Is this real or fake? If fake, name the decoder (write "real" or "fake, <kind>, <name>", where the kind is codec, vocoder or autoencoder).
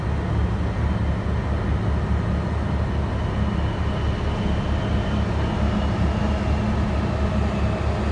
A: real